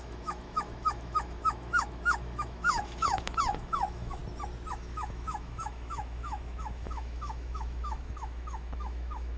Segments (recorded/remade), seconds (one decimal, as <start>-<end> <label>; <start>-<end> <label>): 0.0-4.2 remade; 4.2-4.7 recorded; 4.7-9.4 remade